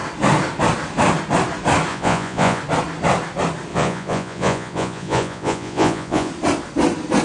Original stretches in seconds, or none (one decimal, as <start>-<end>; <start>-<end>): 0.0-1.9; 2.6-3.7; 6.3-7.2